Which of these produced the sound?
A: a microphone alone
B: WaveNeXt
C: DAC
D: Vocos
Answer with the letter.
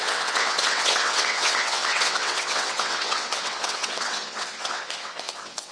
B